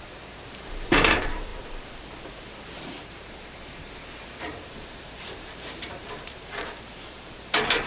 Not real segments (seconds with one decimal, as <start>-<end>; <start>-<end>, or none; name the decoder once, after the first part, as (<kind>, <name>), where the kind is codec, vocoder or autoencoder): 0.0-7.9 (vocoder, BigVGAN v2)